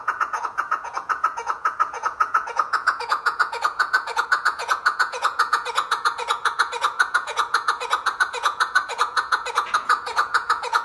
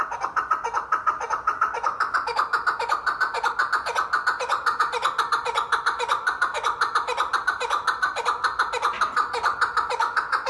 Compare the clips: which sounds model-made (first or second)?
first